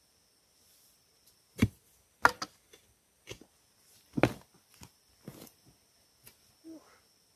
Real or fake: real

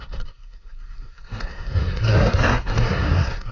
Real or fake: fake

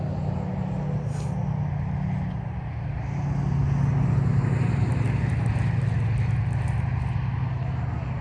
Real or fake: real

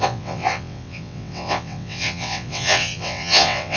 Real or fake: fake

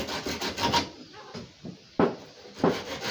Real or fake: real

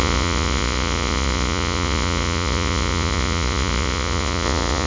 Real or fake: fake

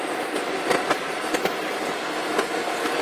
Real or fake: real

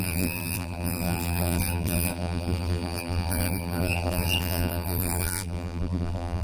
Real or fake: fake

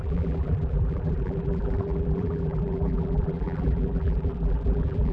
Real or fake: fake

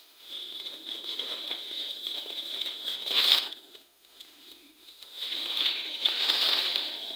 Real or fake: fake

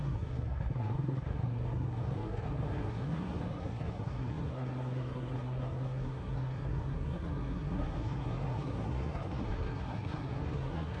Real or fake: fake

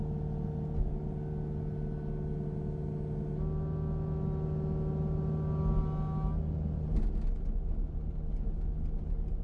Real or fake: real